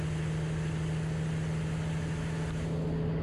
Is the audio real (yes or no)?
yes